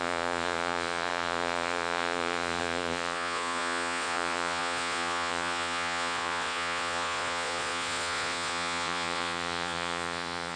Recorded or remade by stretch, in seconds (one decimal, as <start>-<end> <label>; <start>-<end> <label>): 0.0-10.6 remade